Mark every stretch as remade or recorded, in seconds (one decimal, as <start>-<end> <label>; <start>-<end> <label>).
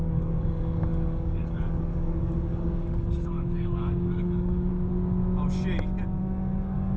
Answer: 0.0-4.7 remade; 4.7-6.2 recorded; 6.2-7.0 remade